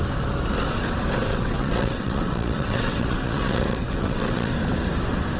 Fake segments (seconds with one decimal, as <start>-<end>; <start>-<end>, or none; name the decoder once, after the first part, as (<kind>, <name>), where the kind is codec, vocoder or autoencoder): 1.3-4.5 (vocoder, WaveNeXt)